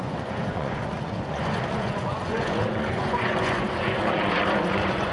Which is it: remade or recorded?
remade